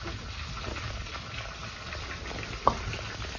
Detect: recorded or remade recorded